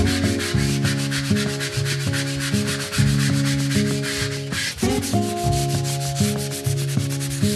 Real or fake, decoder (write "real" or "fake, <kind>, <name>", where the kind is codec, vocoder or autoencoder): real